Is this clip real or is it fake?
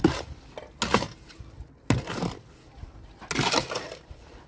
real